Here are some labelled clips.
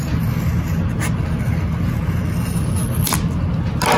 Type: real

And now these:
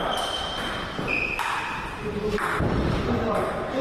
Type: fake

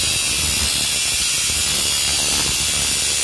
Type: real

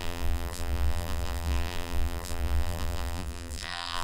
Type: fake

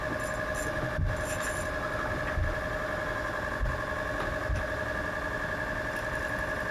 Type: real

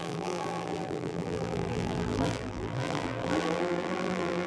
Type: fake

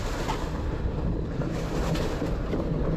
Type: real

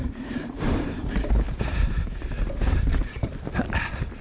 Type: fake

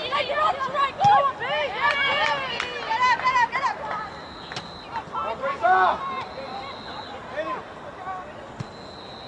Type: real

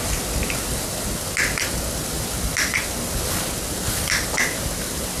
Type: real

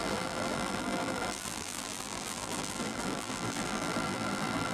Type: fake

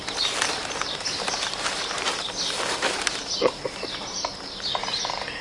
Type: fake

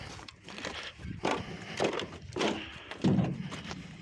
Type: fake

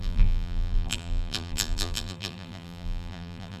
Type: fake